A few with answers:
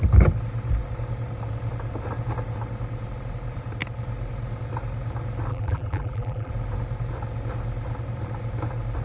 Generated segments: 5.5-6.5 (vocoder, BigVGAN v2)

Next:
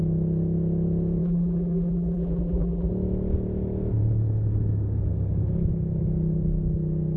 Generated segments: 1.2-2.9 (vocoder, BigVGAN v2)